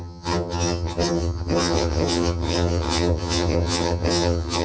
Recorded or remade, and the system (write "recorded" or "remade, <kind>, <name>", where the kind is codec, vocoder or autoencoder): remade, vocoder, HiFi-GAN